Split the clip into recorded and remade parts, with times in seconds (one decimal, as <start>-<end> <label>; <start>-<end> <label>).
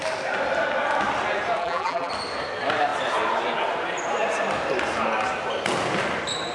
0.0-1.6 recorded; 1.6-2.1 remade; 2.1-6.5 recorded